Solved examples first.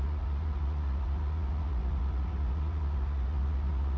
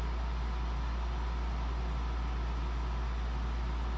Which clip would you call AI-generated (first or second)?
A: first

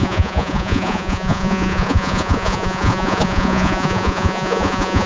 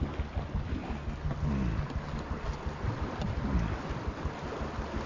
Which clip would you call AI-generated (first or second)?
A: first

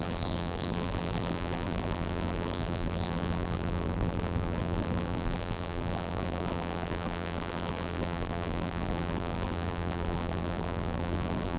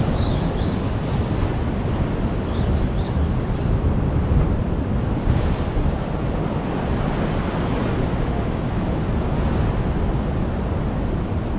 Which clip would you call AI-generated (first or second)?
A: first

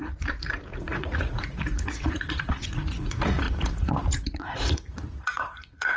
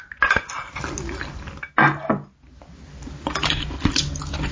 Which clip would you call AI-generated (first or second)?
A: first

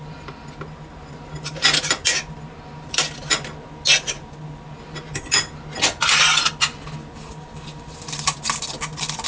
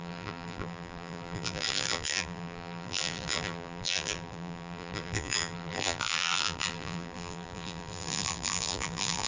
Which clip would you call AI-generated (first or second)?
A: second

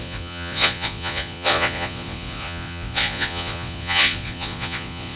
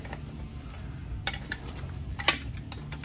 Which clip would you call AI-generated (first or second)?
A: first